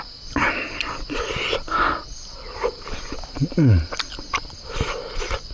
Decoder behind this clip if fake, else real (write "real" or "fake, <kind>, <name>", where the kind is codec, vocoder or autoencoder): real